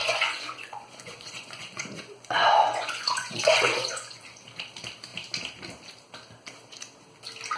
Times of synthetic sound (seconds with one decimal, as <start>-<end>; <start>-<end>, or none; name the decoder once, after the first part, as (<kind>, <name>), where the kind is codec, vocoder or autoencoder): 0.0-4.2 (vocoder, Vocos)